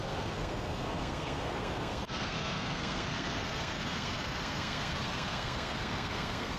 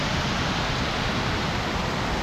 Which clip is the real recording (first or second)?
second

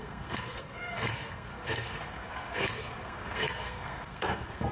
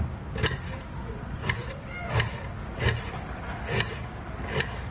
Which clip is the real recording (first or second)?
second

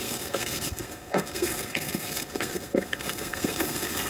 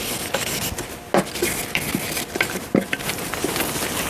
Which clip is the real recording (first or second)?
second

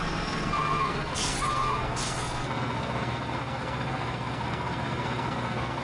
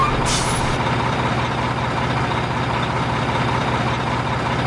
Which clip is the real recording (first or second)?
second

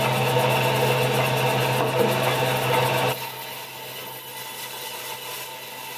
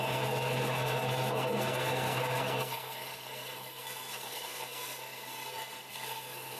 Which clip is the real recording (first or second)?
first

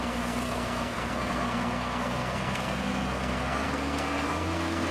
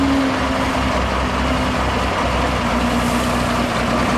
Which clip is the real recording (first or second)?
second